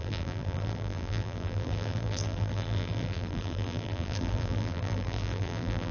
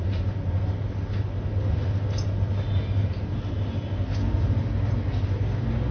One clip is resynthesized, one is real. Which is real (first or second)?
second